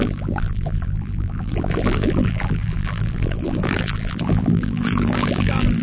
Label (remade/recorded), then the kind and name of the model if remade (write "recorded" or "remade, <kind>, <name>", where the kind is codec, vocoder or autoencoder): remade, vocoder, BigVGAN v2